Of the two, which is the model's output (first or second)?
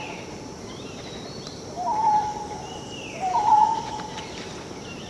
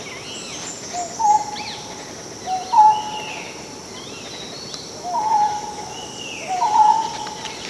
first